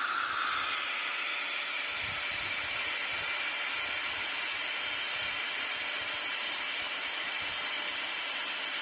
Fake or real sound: real